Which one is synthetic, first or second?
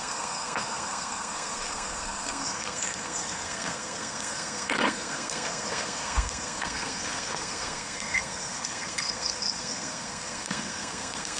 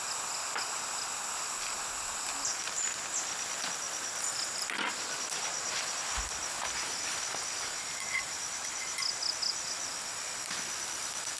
first